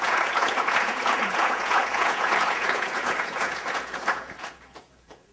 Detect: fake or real fake